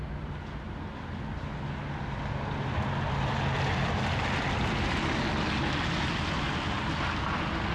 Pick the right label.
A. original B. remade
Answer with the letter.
A